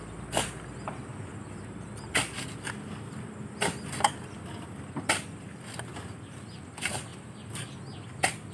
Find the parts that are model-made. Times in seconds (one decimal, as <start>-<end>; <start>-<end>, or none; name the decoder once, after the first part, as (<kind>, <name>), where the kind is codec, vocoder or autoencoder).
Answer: none